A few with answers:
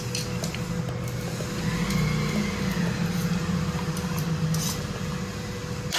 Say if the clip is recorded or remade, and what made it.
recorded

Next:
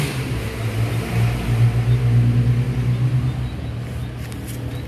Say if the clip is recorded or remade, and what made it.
recorded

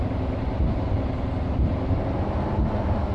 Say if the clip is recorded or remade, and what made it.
recorded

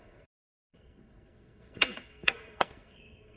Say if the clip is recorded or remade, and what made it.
remade, codec, SNAC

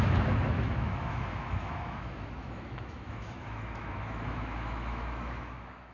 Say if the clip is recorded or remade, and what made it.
remade, autoencoder, DAC-VAE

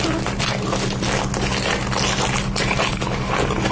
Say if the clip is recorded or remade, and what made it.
recorded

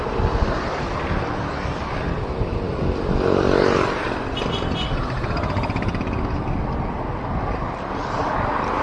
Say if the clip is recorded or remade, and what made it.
recorded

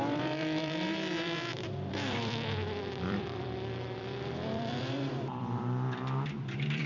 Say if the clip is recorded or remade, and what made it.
remade, vocoder, BigVGAN v2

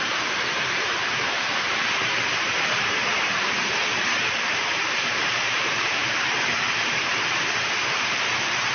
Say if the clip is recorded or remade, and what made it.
remade, vocoder, BigVGAN v2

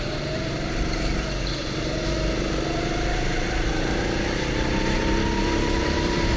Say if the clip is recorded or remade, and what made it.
remade, vocoder, BigVGAN v2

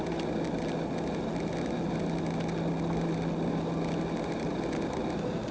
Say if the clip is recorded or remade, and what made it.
recorded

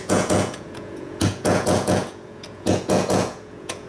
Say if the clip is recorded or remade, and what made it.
remade, vocoder, Vocos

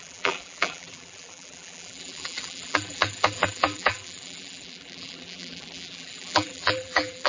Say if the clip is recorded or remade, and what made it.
remade, vocoder, BigVGAN v2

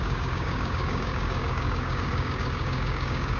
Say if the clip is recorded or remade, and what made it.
remade, codec, DAC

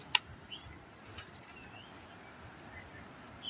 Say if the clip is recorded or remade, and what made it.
recorded